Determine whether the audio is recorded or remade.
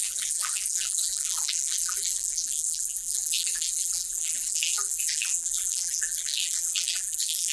remade